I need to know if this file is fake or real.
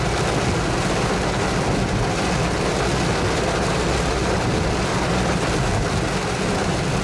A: real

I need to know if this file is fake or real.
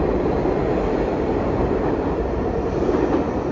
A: real